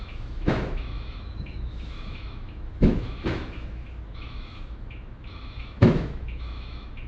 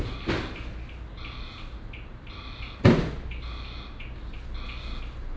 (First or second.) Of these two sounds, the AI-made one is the first